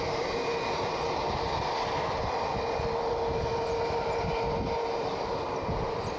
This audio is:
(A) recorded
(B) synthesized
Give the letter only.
A